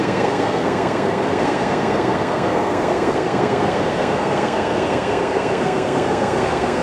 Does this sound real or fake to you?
fake